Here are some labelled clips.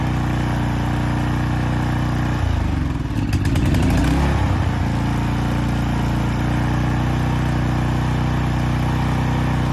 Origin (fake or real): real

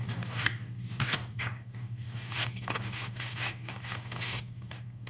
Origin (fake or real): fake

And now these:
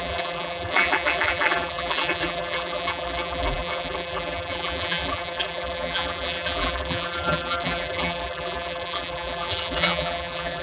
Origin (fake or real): fake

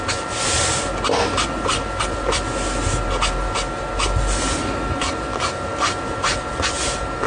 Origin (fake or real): real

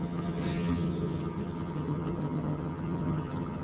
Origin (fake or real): fake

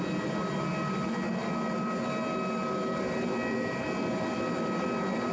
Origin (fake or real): real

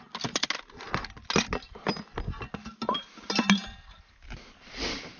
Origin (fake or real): real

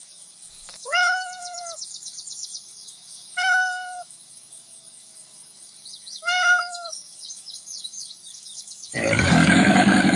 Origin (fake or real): fake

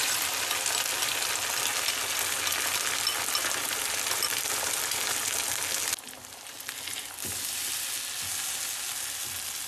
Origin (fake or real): real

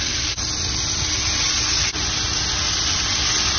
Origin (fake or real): real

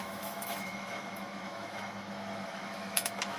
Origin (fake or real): fake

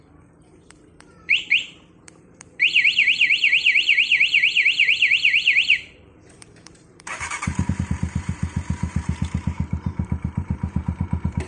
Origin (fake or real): fake